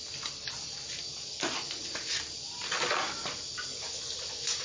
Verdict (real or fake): real